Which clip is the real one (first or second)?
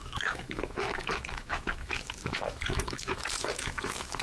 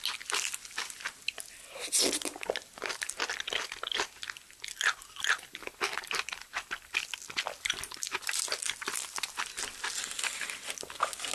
second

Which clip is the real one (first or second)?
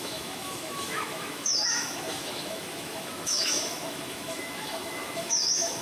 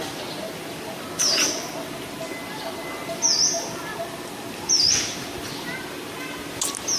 second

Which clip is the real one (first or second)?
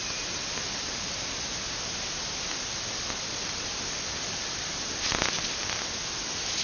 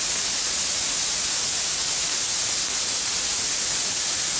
first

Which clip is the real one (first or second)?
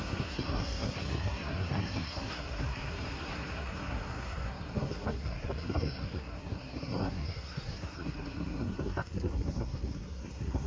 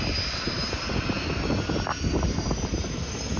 second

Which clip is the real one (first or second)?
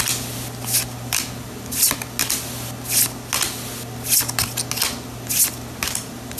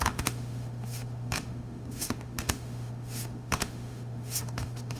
first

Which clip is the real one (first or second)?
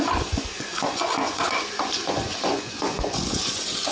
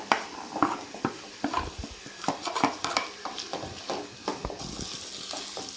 second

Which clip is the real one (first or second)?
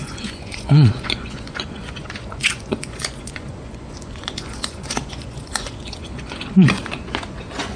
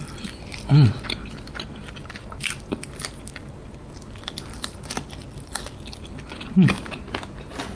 second